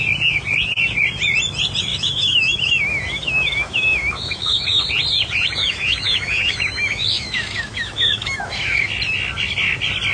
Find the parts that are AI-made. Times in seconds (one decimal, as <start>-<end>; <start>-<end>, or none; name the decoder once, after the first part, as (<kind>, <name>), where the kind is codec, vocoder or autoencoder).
1.9-4.8 (autoencoder, DAC-VAE); 5.6-8.9